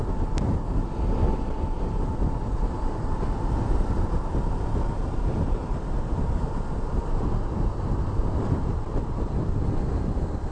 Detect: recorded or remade recorded